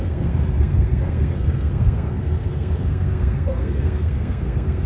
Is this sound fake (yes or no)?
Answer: yes